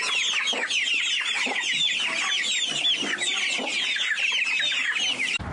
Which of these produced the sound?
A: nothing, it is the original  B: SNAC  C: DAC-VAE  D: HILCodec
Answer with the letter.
A